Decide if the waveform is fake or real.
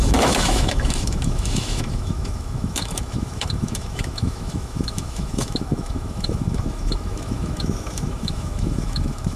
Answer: fake